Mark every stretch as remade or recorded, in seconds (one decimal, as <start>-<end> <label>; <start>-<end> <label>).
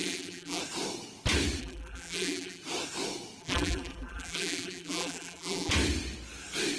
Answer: 0.0-0.6 remade; 0.6-1.6 recorded; 1.6-2.6 remade; 2.6-3.4 recorded; 3.4-5.7 remade; 5.7-6.8 recorded